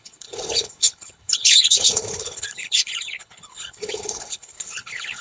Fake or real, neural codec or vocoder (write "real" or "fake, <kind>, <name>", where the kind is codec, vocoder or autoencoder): fake, codec, HILCodec